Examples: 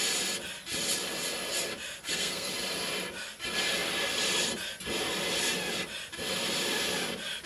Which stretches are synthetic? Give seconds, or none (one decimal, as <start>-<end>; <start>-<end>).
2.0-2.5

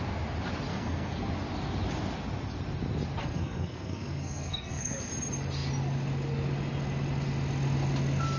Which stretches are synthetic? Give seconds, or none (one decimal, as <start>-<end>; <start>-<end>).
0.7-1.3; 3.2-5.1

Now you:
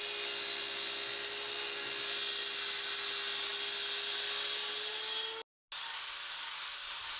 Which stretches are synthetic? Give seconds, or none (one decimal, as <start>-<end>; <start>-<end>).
none